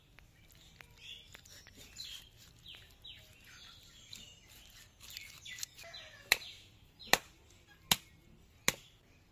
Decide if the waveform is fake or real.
real